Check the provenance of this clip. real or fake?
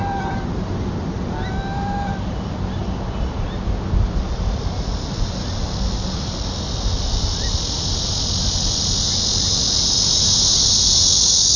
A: real